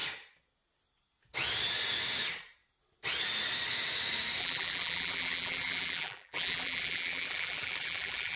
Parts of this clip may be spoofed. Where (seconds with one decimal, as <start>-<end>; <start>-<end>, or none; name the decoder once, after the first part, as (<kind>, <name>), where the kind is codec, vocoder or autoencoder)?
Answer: 4.4-8.4 (vocoder, BigVGAN v2)